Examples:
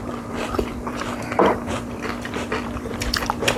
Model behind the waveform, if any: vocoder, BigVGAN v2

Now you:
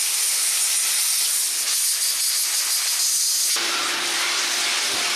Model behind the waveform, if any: none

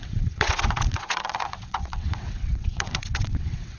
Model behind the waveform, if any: vocoder, WaveNeXt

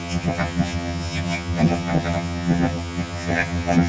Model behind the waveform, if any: vocoder, HiFi-GAN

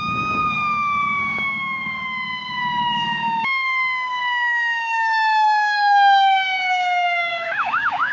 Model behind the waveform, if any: codec, DAC